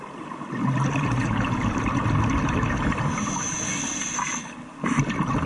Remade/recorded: recorded